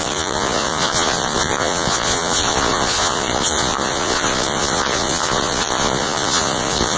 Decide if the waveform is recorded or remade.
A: remade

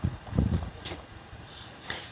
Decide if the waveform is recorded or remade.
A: remade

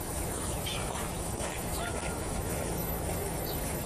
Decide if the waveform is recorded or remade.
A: remade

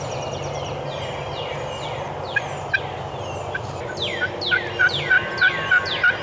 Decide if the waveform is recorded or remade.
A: recorded